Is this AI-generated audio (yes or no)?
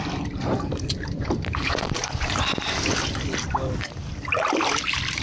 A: no